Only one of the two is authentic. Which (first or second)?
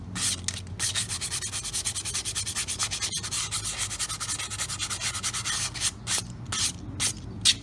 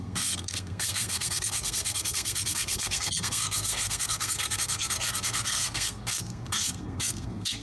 first